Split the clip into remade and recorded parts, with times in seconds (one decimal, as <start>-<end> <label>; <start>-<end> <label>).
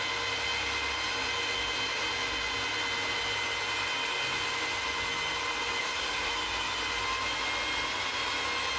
0.0-5.8 recorded; 5.8-6.3 remade; 6.3-8.8 recorded